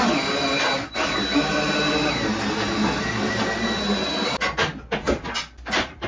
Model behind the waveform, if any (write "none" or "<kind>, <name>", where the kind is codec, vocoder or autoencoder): none